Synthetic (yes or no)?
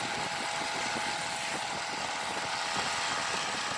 no